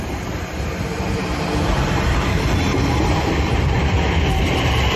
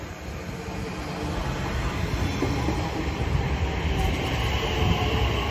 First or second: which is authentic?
second